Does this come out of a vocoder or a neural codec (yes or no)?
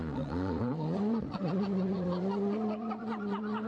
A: yes